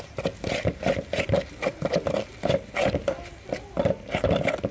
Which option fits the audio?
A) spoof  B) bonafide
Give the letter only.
B